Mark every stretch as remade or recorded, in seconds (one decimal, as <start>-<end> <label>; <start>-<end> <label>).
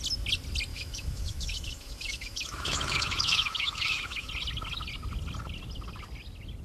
0.0-0.7 recorded; 0.7-4.3 remade; 4.3-6.6 recorded